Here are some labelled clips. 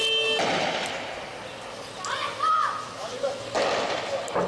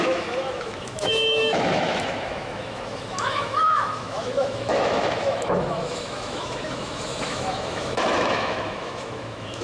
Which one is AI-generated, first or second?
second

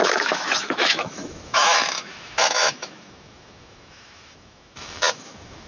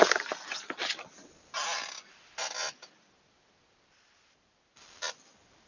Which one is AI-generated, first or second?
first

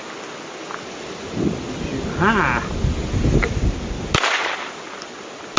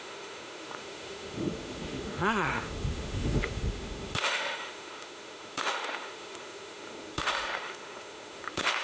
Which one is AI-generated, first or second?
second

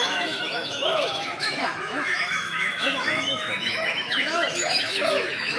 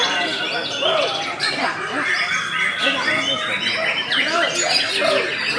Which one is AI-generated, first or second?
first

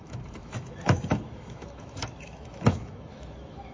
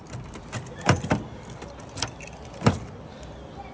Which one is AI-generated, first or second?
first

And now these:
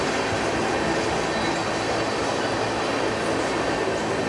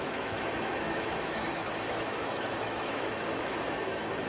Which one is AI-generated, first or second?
second